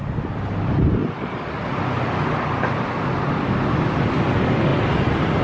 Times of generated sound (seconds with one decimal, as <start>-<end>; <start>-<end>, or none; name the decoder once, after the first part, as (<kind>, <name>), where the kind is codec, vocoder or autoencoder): 4.7-5.4 (vocoder, BigVGAN v2)